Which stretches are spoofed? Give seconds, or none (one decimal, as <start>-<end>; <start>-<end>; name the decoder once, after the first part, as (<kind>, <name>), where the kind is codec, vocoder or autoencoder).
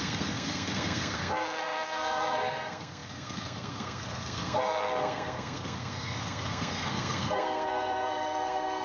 0.0-8.8 (codec, SNAC)